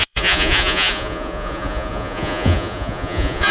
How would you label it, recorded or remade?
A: remade